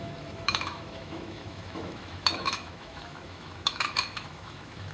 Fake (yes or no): yes